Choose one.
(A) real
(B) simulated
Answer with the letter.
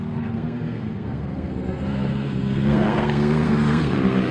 B